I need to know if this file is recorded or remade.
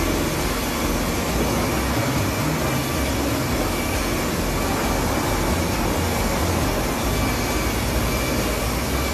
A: recorded